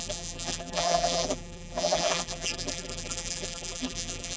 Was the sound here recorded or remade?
remade